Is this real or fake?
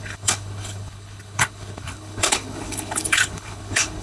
fake